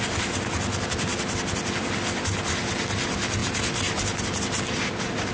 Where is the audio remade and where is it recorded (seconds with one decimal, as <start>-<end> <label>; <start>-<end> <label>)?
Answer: 0.0-5.3 recorded